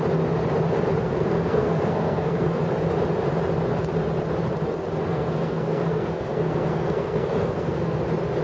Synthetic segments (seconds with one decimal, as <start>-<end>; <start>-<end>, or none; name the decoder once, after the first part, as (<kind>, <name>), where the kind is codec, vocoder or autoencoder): 1.0-2.6 (codec, SNAC); 5.1-8.0

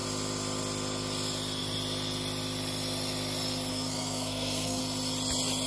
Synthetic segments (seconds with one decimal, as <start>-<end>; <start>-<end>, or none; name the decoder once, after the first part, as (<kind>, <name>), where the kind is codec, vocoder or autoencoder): 3.7-4.8 (codec, SNAC)

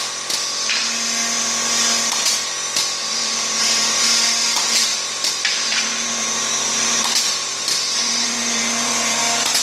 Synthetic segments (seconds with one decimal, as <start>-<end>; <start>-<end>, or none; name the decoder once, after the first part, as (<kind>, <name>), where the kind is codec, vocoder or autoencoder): 3.0-4.0 (vocoder, BigVGAN v2); 4.9-9.2

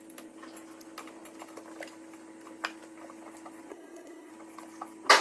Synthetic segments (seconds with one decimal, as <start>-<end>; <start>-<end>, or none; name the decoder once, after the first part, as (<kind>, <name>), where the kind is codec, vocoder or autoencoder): 3.7-4.3 (codec, SNAC)